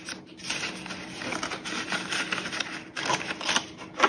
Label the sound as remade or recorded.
recorded